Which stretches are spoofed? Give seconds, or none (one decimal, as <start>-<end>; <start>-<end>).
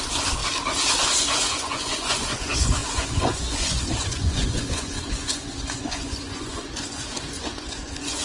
0.0-0.4; 1.0-8.2